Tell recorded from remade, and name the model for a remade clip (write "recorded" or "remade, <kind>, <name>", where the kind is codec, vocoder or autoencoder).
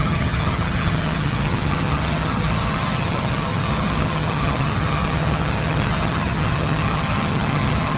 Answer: remade, vocoder, HiFi-GAN